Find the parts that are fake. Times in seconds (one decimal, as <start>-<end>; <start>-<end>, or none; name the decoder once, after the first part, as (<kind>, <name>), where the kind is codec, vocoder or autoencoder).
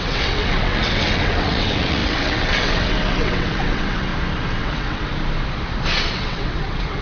0.0-4.1 (vocoder, WaveNeXt); 4.6-5.1; 6.1-7.0